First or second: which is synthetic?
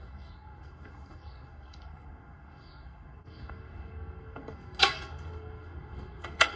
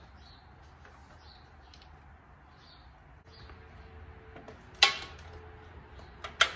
first